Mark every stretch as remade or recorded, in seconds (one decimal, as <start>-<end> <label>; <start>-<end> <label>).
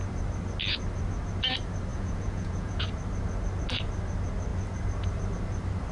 0.0-1.9 recorded; 1.9-2.8 remade; 2.8-5.9 recorded